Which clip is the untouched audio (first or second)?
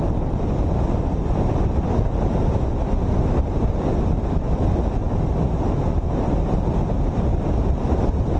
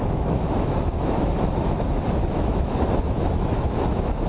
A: first